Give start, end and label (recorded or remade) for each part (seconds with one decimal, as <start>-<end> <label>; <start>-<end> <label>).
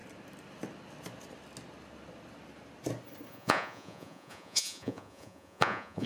0.0-3.3 recorded; 3.3-6.1 remade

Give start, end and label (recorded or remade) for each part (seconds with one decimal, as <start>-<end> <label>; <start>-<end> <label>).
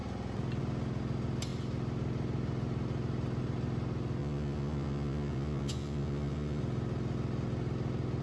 0.0-4.2 recorded; 4.2-6.6 remade; 6.6-8.2 recorded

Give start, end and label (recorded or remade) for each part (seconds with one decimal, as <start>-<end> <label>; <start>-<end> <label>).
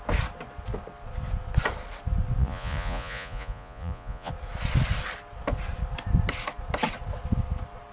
0.0-2.4 recorded; 2.4-4.3 remade; 4.3-7.9 recorded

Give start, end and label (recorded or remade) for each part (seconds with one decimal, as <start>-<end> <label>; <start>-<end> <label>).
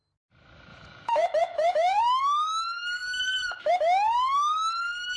0.0-0.7 recorded; 0.7-2.0 remade; 2.0-5.2 recorded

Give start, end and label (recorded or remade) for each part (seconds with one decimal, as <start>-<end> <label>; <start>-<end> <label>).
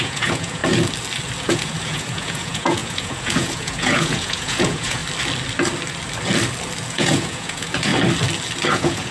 0.0-0.6 remade; 0.6-1.4 recorded; 1.4-5.0 remade; 5.0-6.9 recorded; 6.9-7.9 remade; 7.9-8.7 recorded; 8.7-9.1 remade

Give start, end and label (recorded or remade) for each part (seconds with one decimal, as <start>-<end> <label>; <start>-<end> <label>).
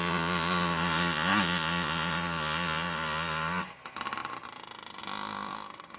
0.0-6.0 recorded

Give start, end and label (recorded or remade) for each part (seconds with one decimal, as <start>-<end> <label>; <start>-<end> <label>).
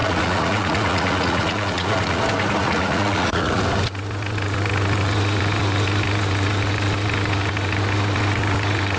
0.0-2.2 remade; 2.2-2.6 recorded; 2.6-3.6 remade; 3.6-9.0 recorded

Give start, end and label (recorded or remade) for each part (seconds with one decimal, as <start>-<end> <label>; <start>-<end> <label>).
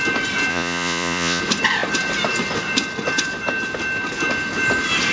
0.0-0.5 recorded; 0.5-1.4 remade; 1.4-5.1 recorded